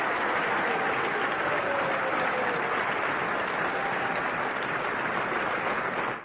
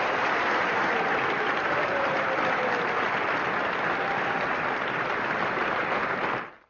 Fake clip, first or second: second